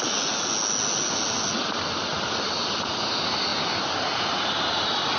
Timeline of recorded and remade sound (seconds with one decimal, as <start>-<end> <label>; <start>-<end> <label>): 0.0-5.2 recorded